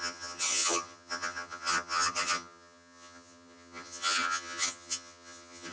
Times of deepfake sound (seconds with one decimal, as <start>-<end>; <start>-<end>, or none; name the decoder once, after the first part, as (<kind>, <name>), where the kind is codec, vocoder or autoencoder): 0.0-5.7 (vocoder, HiFi-GAN)